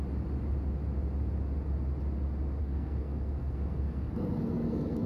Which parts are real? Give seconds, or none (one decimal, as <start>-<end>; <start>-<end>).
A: 0.0-2.6